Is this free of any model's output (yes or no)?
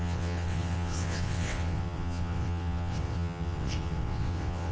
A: no